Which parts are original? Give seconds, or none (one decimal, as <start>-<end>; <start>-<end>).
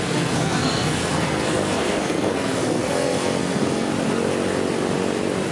3.9-5.5